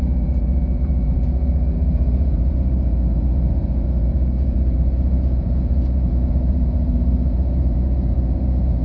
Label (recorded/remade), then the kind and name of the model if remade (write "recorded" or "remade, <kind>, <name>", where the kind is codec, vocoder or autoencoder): remade, vocoder, Vocos